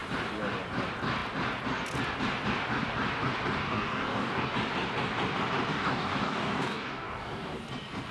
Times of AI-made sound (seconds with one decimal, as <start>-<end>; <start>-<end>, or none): 3.6-4.5; 5.7-7.6